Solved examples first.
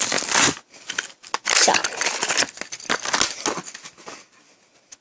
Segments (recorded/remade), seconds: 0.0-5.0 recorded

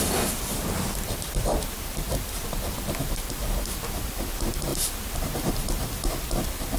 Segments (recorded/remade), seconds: 0.0-4.7 remade; 4.7-5.5 recorded; 5.5-6.8 remade

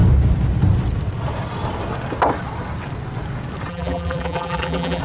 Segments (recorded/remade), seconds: 0.0-3.7 recorded; 3.7-5.0 remade

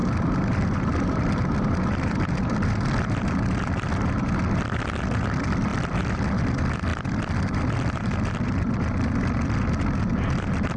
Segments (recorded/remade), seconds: 0.0-3.3 remade; 3.3-6.9 recorded; 6.9-8.1 remade; 8.1-10.8 recorded

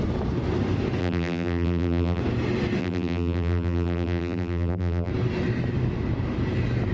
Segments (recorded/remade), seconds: 0.0-1.0 recorded; 1.0-2.2 remade; 2.2-2.8 recorded; 2.8-5.1 remade; 5.1-6.9 recorded